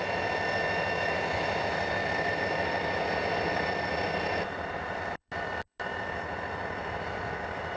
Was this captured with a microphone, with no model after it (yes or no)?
yes